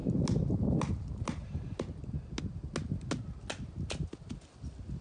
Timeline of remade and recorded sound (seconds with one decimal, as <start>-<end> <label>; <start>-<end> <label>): 0.0-5.0 recorded